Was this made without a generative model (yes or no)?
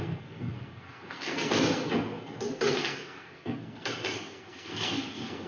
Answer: no